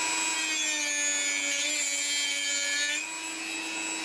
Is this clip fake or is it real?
real